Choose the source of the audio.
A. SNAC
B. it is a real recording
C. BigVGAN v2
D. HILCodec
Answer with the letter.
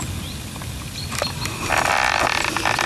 B